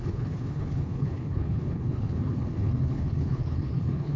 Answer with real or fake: fake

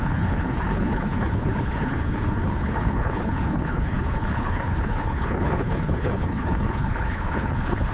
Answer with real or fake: fake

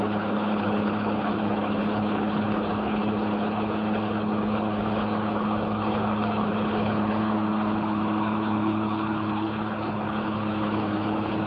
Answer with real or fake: fake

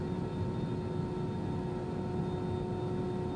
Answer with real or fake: real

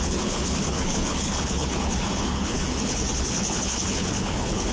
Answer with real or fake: fake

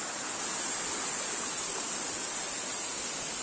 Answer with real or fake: real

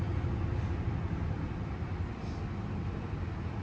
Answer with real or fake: real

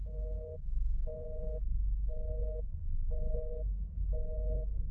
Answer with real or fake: fake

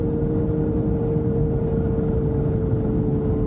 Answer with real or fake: real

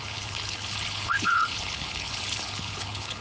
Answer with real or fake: fake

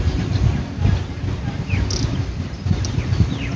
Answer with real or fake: real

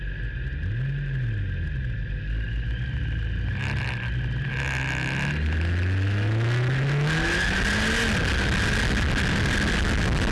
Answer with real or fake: real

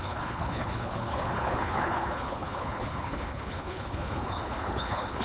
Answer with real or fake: fake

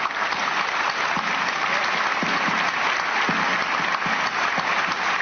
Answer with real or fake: real